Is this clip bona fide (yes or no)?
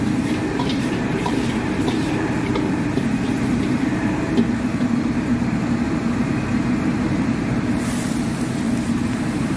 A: no